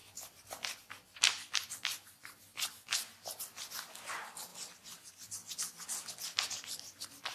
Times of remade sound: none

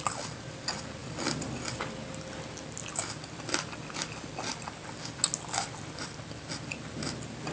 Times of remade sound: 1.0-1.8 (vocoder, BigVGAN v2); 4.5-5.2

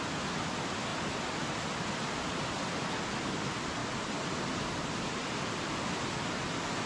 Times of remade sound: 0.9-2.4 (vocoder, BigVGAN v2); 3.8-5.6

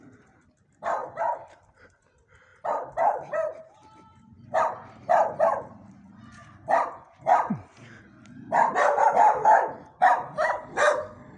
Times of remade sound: 1.0-2.0 (vocoder, BigVGAN v2); 2.5-5.9

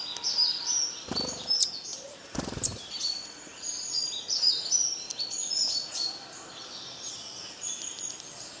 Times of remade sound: 1.9-3.0 (vocoder, BigVGAN v2)